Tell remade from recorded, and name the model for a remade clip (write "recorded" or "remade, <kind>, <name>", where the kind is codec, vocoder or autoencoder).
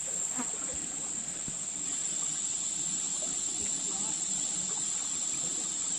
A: remade, vocoder, BigVGAN v2